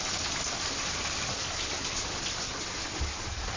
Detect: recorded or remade recorded